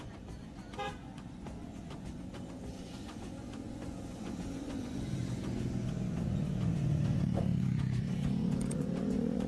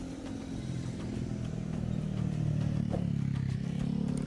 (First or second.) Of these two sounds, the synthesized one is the first